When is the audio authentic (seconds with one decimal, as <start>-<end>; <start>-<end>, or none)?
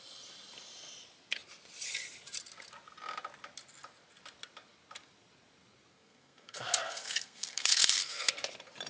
0.0-5.9; 8.3-8.9